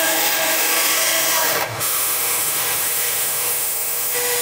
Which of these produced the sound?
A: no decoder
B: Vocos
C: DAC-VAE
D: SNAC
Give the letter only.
C